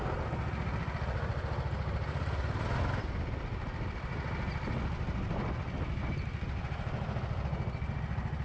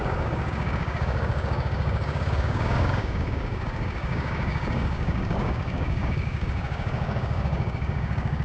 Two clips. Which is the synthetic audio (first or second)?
second